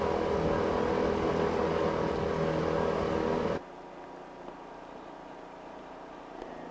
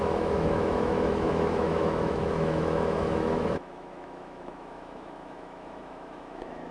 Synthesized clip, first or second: second